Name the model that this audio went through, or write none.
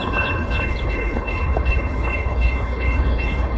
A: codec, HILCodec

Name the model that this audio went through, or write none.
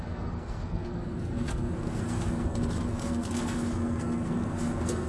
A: codec, SNAC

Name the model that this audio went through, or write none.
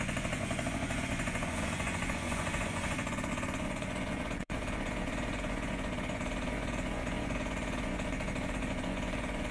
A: vocoder, Vocos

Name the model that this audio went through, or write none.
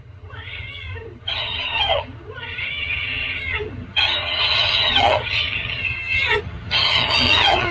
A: vocoder, HiFi-GAN